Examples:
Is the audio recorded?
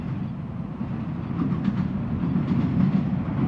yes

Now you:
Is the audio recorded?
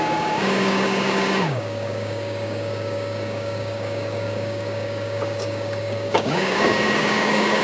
no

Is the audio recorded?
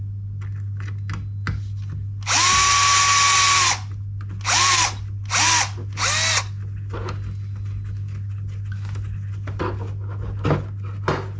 yes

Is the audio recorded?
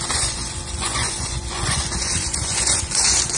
no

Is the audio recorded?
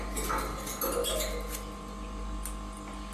yes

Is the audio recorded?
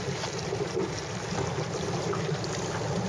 yes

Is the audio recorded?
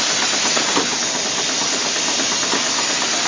yes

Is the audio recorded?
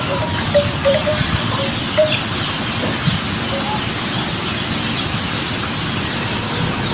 no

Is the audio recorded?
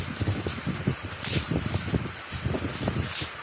yes